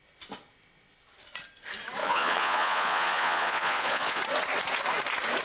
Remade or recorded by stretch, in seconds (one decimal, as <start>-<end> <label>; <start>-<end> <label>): 0.0-2.0 recorded; 2.0-4.2 remade; 4.2-5.4 recorded